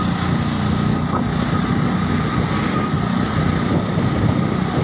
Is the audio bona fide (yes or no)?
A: yes